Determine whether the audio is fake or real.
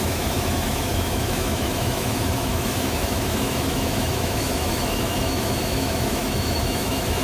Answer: fake